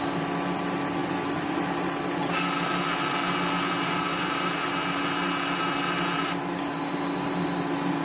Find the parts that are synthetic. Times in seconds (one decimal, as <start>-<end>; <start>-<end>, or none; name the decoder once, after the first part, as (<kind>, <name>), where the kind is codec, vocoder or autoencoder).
none